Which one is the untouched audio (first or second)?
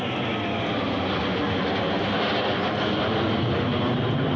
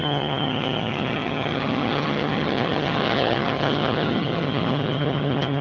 first